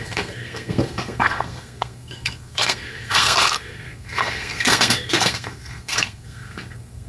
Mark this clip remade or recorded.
remade